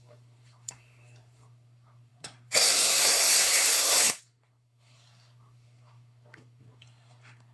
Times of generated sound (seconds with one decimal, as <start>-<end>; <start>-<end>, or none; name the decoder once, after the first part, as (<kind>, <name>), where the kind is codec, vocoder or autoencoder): 0.0-7.5 (codec, SNAC)